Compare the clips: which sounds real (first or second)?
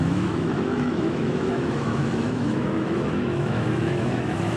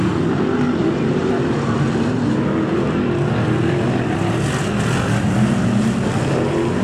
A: second